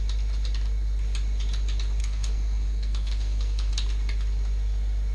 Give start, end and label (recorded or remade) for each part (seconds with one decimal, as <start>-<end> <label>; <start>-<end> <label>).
0.0-2.0 recorded; 2.0-3.7 remade; 3.7-5.1 recorded